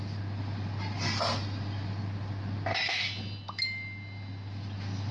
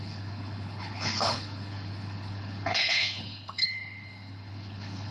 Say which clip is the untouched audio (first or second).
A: first